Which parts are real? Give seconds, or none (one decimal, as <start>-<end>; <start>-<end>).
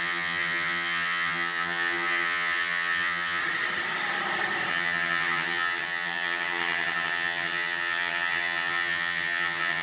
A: 3.4-4.7